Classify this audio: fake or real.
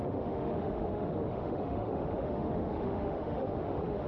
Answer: fake